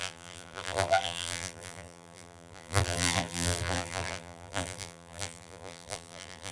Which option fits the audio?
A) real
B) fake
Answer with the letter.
B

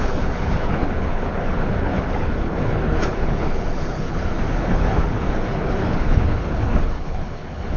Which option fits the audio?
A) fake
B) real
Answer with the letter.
A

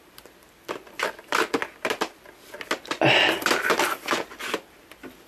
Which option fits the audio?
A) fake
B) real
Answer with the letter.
B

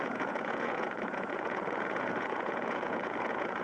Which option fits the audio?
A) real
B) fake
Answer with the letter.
B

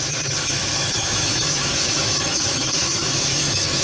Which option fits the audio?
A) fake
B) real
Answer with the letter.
A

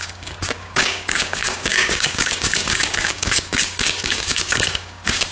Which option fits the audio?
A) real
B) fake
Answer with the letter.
B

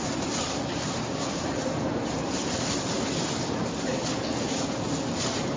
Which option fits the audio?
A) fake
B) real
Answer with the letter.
B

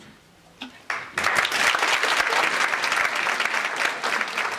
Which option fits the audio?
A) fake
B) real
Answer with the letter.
B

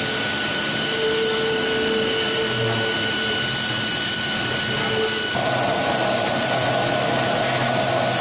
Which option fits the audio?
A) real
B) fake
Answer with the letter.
A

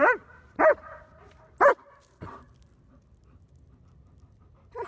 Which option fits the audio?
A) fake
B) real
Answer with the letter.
B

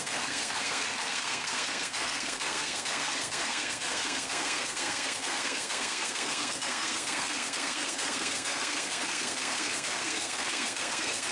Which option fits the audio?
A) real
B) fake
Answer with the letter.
B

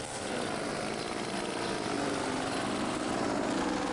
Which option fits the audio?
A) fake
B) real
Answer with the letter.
B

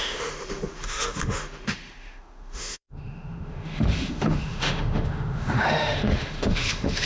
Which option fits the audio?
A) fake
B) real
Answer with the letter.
A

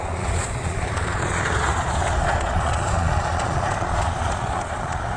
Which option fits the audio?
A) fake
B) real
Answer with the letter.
A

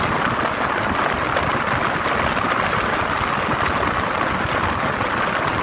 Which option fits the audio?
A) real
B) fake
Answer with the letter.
A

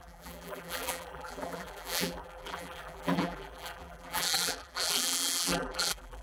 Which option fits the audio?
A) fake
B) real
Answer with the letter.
A